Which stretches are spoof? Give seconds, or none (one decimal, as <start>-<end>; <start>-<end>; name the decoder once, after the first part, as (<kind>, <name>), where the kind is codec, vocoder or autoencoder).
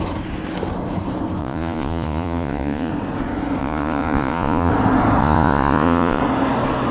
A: 1.4-2.9 (vocoder, Vocos); 3.6-4.7; 5.2-6.2